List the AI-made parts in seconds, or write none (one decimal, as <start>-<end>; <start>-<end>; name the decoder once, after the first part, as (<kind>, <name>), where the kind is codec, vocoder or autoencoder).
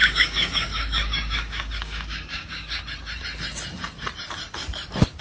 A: 0.0-2.8 (codec, DAC)